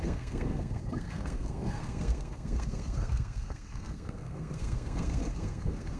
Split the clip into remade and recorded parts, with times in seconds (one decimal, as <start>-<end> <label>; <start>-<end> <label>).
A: 0.0-6.0 remade